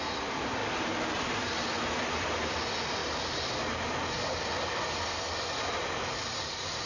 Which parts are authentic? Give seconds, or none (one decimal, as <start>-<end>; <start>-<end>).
0.0-6.9